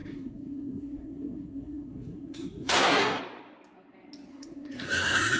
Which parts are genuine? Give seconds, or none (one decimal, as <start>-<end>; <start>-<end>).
3.2-4.3